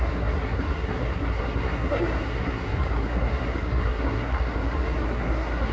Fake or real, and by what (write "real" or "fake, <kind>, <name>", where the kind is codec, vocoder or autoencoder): fake, codec, SNAC